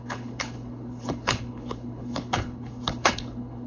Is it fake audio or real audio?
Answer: fake